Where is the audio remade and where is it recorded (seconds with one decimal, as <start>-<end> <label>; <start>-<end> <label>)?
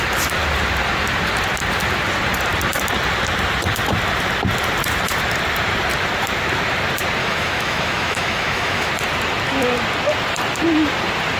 0.0-7.2 recorded; 7.2-8.9 remade; 8.9-11.4 recorded